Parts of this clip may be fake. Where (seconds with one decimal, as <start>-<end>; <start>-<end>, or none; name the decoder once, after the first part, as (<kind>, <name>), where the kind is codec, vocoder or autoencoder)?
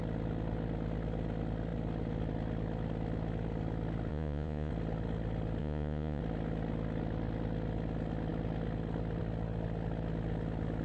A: 4.1-4.7 (vocoder, Vocos); 5.6-6.2